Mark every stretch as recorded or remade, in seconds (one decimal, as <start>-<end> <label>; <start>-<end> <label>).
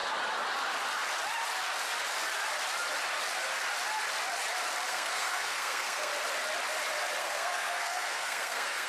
0.0-4.9 recorded; 4.9-6.1 remade; 6.1-7.2 recorded; 7.2-8.9 remade